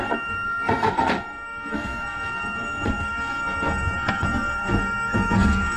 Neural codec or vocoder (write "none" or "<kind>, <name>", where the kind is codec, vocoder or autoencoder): codec, SNAC